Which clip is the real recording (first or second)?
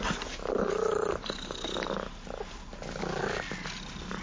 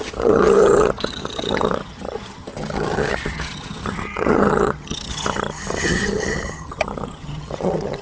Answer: first